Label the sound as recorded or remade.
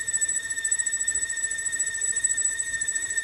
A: remade